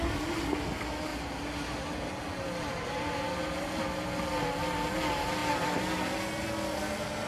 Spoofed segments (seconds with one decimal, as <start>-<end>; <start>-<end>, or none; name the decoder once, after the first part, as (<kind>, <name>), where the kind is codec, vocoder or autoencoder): none